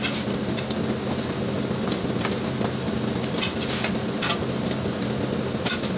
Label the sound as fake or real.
real